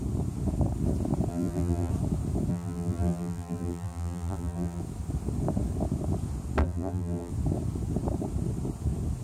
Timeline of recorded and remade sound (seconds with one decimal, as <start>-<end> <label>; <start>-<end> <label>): 0.0-1.3 recorded; 1.3-1.9 remade; 1.9-2.5 recorded; 2.5-4.8 remade; 4.8-6.6 recorded; 6.6-7.3 remade; 7.3-9.2 recorded